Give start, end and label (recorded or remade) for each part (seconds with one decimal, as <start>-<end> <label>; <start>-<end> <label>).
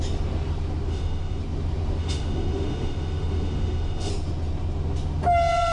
0.0-0.9 recorded; 0.9-1.4 remade; 1.4-2.0 recorded; 2.0-4.1 remade; 4.1-5.7 recorded